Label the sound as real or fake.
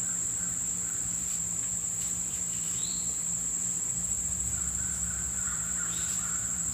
fake